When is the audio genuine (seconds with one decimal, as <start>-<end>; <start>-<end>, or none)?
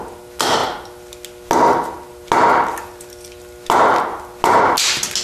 0.0-5.2